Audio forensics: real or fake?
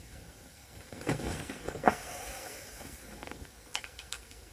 fake